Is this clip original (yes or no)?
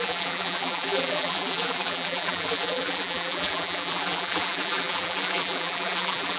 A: no